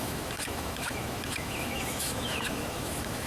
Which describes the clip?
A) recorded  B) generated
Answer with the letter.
B